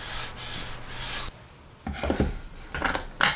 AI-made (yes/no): no